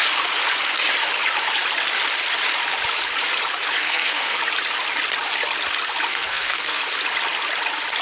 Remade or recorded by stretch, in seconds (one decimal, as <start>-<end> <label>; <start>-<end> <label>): 0.0-3.8 recorded; 3.8-4.4 remade; 4.4-6.1 recorded; 6.1-6.8 remade; 6.8-8.0 recorded